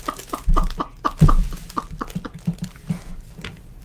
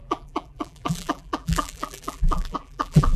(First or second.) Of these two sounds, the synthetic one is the second